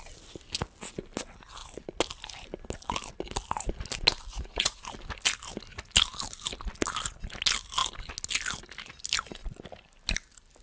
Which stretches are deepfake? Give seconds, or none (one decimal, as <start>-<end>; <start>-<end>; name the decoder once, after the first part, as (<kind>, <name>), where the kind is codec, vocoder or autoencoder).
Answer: 4.3-4.8 (vocoder, Vocos)